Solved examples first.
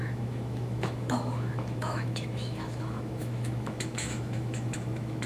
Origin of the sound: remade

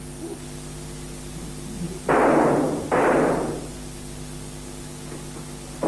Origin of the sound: recorded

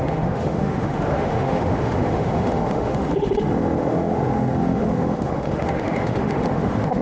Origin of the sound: remade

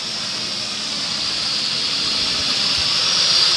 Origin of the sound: recorded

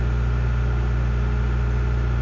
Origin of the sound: recorded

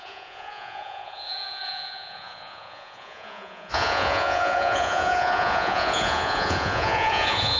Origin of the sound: remade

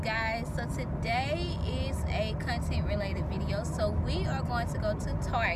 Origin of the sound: recorded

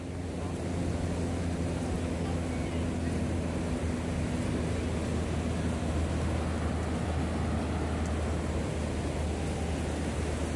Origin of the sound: recorded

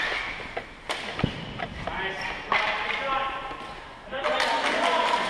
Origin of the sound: recorded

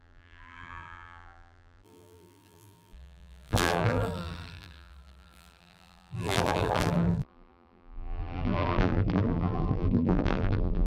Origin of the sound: remade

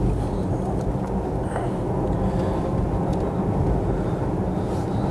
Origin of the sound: recorded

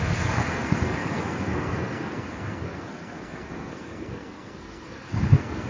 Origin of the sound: remade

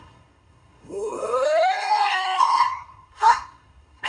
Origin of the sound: remade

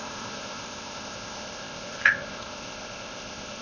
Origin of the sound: remade